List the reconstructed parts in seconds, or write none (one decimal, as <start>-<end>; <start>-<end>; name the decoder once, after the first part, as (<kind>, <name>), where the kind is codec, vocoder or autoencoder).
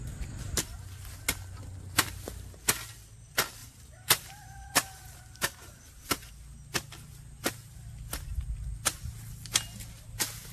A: 3.6-6.3 (vocoder, BigVGAN v2)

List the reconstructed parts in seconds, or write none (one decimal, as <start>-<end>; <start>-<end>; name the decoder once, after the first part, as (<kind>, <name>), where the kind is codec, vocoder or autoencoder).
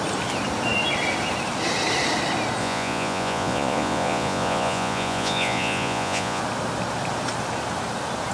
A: 2.6-6.4 (vocoder, Vocos)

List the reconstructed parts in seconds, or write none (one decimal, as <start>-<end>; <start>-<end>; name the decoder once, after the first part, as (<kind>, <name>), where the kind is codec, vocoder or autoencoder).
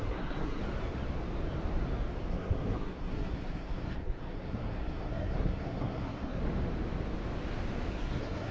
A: 0.0-0.6 (codec, SNAC); 2.3-6.4; 7.9-8.5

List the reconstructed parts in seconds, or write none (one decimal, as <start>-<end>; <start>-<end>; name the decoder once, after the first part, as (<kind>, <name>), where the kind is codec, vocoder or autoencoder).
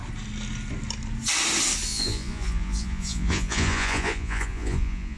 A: 1.9-5.2 (vocoder, Vocos)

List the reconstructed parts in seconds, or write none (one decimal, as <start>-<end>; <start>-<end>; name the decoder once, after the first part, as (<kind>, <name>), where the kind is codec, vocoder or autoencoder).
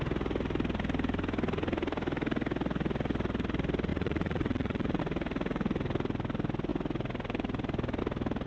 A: 3.9-5.0 (vocoder, Vocos)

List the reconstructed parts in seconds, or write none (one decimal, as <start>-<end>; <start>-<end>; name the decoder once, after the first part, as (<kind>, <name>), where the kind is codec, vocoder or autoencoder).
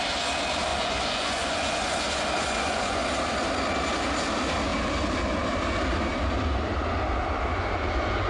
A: 0.7-3.0 (vocoder, Vocos); 7.5-8.3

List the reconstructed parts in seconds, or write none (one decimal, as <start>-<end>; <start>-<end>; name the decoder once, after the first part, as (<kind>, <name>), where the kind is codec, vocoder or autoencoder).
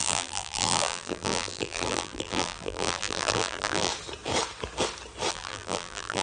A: 0.0-3.9 (vocoder, BigVGAN v2); 5.3-6.2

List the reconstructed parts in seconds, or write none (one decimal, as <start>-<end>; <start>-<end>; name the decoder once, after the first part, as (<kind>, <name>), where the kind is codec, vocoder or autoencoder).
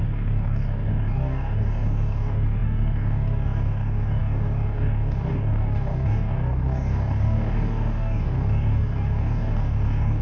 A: 0.0-10.2 (codec, DAC)